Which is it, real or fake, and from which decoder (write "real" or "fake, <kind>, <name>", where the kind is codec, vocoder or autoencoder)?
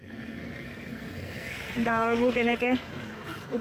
fake, codec, SNAC